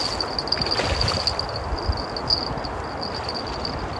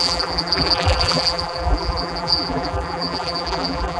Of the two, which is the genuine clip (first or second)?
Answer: first